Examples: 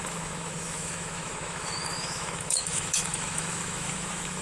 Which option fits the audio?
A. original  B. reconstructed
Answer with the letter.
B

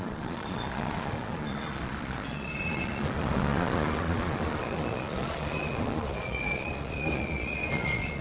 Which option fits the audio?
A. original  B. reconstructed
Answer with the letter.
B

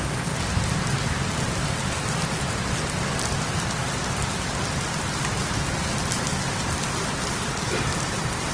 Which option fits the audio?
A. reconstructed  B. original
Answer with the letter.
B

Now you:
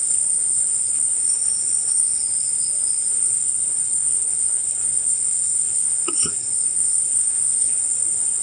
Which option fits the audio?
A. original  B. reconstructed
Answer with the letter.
B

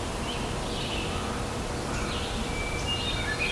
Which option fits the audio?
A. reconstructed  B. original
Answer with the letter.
B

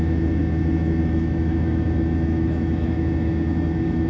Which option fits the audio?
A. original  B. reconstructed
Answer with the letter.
B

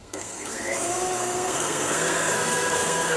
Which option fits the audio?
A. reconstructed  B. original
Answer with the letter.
A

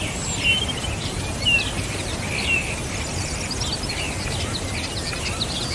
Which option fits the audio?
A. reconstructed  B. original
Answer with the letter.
B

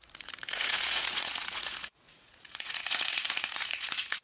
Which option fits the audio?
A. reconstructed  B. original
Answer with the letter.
A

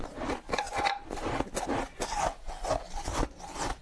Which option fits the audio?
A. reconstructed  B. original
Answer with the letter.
B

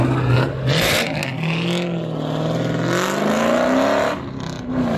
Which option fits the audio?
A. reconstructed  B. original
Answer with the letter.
B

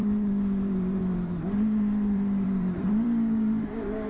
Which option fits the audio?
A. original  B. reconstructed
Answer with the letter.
B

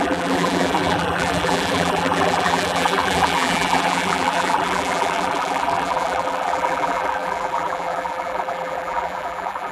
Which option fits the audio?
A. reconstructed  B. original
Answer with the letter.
A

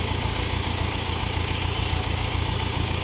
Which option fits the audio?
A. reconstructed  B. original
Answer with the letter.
A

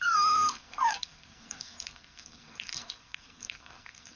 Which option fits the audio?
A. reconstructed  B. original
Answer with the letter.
A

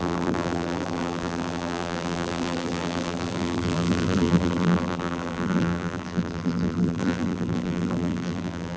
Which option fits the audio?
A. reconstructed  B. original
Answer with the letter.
A